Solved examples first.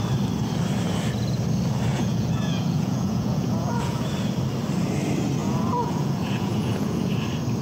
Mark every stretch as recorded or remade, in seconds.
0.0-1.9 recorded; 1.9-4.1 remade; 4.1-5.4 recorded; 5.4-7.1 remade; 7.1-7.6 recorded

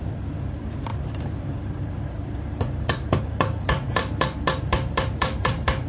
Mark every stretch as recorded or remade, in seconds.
0.0-5.9 remade

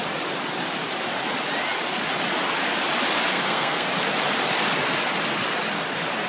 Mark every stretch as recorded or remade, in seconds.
0.0-3.3 recorded; 3.3-3.9 remade; 3.9-6.3 recorded

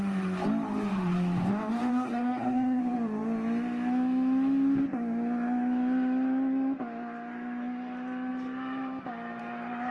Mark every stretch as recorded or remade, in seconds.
0.0-1.9 recorded; 1.9-2.8 remade; 2.8-9.9 recorded

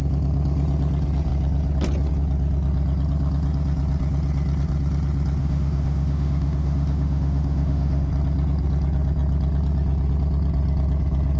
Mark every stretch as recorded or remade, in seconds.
0.0-5.4 recorded; 5.4-8.1 remade; 8.1-11.4 recorded

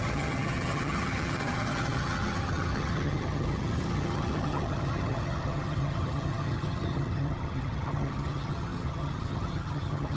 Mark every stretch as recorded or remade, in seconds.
0.0-10.2 remade

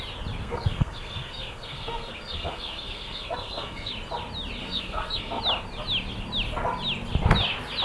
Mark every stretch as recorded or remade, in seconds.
0.0-0.4 recorded; 0.4-3.9 remade; 3.9-4.6 recorded; 4.6-5.4 remade; 5.4-7.8 recorded

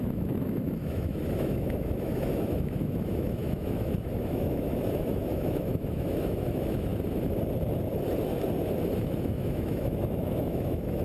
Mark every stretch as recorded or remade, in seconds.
0.0-6.9 remade; 6.9-9.0 recorded; 9.0-11.0 remade